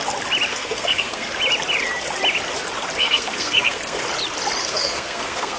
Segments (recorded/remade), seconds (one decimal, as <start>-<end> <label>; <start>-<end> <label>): 0.0-0.5 recorded; 0.5-1.3 remade; 1.3-3.0 recorded; 3.0-4.0 remade; 4.0-4.6 recorded; 4.6-5.6 remade